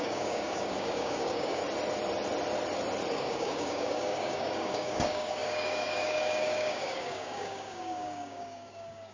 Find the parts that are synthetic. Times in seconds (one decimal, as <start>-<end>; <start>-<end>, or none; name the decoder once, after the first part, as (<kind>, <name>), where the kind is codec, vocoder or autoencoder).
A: 0.0-1.6 (codec, DAC); 3.1-9.1

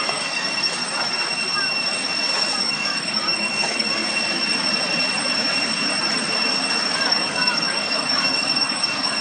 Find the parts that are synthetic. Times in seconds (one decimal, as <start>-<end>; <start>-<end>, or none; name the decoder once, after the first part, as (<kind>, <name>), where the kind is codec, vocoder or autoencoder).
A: 0.0-0.8 (codec, DAC); 2.6-4.0; 6.9-9.2

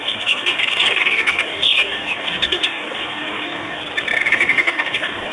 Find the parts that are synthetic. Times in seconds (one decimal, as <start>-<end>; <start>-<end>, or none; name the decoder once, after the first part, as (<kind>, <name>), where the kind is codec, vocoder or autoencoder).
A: 0.0-3.8 (codec, DAC); 4.3-5.3

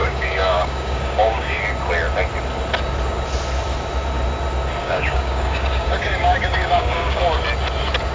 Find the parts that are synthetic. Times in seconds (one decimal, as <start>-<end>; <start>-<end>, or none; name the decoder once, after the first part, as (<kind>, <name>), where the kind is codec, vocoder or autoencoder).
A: 0.0-1.6 (codec, DAC); 4.8-7.2

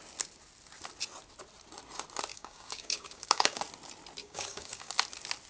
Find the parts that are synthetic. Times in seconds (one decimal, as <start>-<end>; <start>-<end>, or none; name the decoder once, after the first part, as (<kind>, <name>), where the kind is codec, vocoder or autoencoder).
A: 2.3-3.6 (codec, DAC); 4.2-4.9

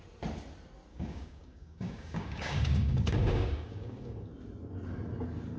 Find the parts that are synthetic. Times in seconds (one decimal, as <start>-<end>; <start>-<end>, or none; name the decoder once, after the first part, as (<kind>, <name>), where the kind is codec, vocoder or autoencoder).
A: 0.9-4.3 (codec, DAC)

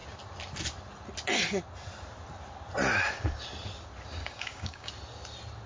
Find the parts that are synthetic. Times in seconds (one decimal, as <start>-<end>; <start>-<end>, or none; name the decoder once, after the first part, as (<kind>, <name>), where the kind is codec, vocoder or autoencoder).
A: 4.2-4.9 (codec, DAC)